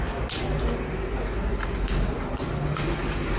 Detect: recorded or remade recorded